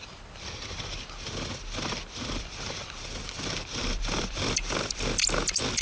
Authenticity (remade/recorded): remade